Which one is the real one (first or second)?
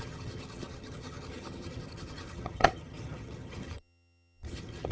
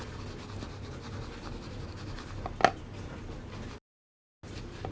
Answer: second